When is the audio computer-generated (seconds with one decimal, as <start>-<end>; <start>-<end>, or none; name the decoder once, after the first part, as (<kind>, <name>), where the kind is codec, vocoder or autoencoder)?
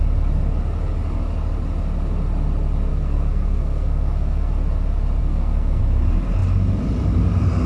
2.9-4.5 (codec, SNAC); 5.2-5.8